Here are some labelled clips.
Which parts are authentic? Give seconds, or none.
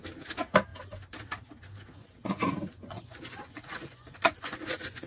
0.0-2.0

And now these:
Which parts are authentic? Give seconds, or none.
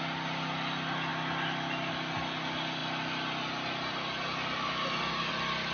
0.0-5.7